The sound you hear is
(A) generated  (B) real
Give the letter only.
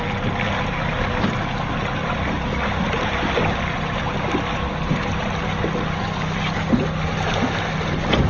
B